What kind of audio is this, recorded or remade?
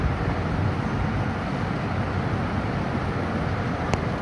recorded